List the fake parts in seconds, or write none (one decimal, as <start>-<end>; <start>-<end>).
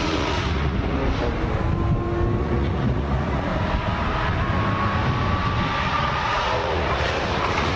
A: 0.0-1.0; 2.4-3.5; 5.8-7.8